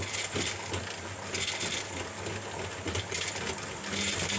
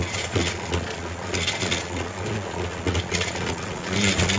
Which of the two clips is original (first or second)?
first